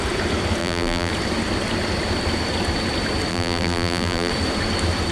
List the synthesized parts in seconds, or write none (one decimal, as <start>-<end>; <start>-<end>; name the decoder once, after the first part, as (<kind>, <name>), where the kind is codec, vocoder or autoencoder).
0.6-1.1 (vocoder, BigVGAN v2); 3.3-4.3